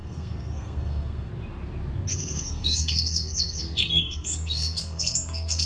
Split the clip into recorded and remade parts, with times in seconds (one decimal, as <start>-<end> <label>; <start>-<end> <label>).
0.0-1.3 remade; 1.3-2.1 recorded; 2.1-5.7 remade